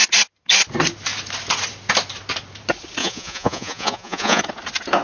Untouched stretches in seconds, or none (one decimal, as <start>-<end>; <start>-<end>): 0.0-3.0; 4.4-5.0